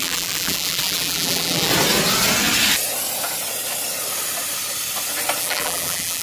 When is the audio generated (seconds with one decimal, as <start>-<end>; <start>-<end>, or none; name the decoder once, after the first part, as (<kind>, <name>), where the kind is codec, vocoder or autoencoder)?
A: 0.0-1.7 (vocoder, BigVGAN v2); 5.4-6.2